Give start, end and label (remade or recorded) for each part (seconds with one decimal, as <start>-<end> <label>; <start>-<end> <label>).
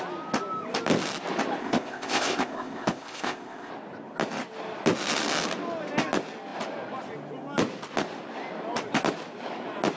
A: 0.0-1.6 recorded; 1.6-3.7 remade; 3.7-10.0 recorded